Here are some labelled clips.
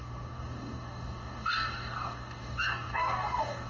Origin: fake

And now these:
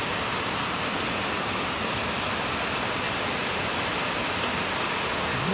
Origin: real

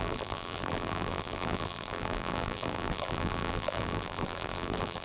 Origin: fake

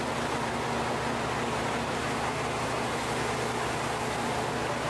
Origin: real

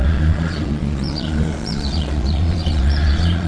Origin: fake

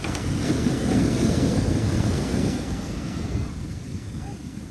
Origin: fake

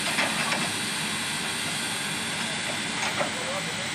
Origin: real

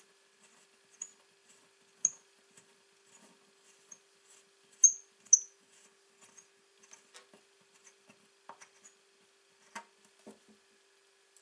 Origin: real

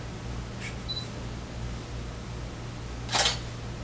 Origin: real